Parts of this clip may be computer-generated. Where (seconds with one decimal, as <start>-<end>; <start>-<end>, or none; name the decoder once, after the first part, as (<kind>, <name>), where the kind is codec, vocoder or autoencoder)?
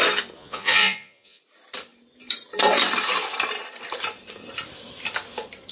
0.4-1.4 (vocoder, Vocos)